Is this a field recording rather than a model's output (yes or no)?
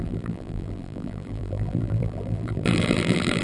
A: no